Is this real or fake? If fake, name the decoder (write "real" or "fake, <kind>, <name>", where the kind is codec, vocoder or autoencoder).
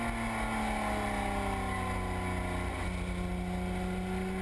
real